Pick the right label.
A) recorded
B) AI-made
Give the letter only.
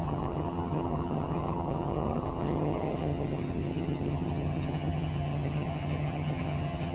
B